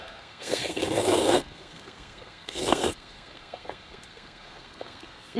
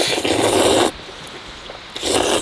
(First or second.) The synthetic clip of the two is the first